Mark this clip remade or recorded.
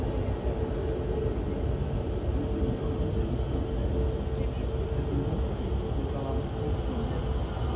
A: recorded